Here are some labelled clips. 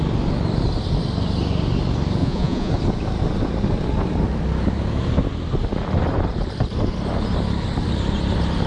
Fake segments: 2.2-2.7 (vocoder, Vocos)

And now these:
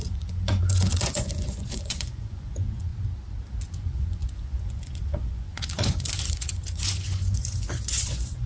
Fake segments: 0.0-2.9 (vocoder, Vocos); 3.7-8.5